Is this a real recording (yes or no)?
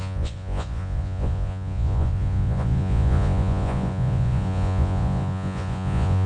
no